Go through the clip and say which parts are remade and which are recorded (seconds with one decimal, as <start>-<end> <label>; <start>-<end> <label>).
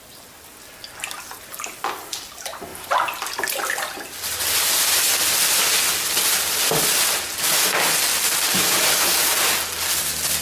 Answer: 0.0-10.4 recorded